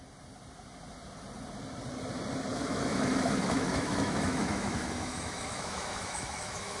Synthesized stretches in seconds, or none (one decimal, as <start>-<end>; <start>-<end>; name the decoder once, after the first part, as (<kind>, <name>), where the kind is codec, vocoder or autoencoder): 2.5-6.8 (autoencoder, DAC-VAE)